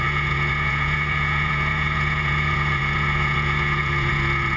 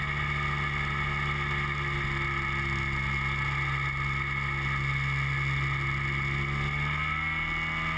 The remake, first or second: first